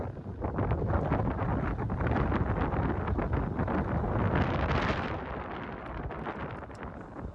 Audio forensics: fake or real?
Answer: real